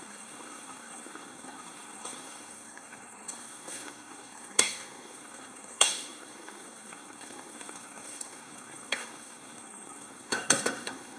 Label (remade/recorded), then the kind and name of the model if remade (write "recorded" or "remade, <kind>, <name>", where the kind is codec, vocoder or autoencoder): remade, codec, SNAC